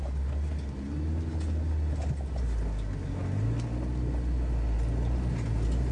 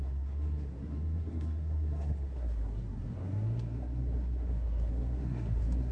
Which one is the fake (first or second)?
second